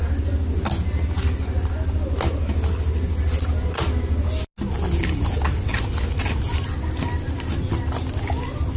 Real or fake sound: real